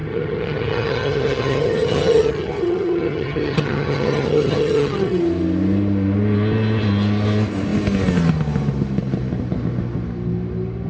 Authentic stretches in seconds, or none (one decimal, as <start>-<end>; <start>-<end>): 5.2-10.9